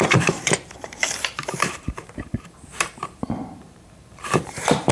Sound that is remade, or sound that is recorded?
remade